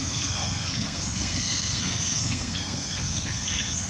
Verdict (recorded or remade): remade